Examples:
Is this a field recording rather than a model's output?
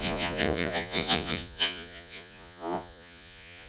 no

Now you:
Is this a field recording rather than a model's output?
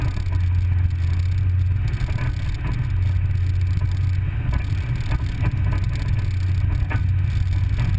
yes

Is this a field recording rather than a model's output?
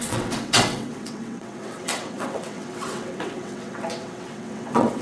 no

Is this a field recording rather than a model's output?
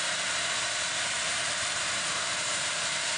no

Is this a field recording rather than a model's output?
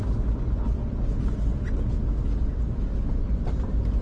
yes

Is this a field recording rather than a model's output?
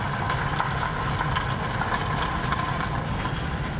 yes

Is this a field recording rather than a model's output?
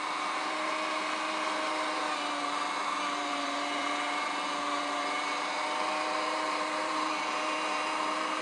no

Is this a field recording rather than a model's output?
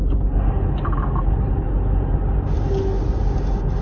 yes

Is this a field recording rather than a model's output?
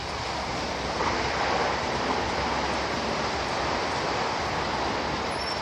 no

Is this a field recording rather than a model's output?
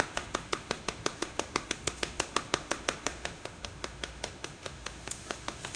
no